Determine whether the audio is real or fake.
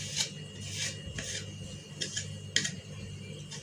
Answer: real